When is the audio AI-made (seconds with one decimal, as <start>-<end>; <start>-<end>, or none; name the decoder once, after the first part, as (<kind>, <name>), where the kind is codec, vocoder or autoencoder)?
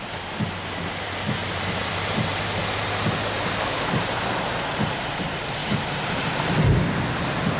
1.4-4.3 (vocoder, BigVGAN v2); 5.6-6.3